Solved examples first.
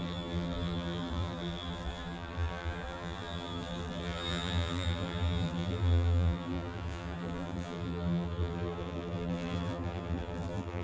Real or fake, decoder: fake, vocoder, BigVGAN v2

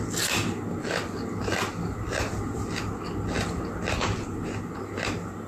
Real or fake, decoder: real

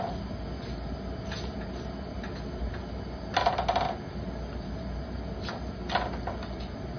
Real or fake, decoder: real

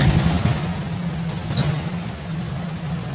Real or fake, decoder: real